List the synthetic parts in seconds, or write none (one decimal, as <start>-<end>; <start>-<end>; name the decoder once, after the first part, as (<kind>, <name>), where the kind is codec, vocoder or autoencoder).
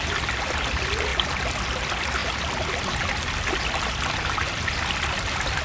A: 0.0-1.1 (vocoder, BigVGAN v2); 1.7-2.2; 5.0-5.6